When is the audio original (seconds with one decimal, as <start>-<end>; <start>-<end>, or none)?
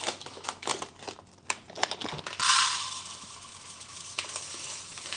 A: 0.7-2.8